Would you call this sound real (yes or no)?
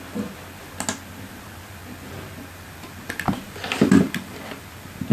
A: yes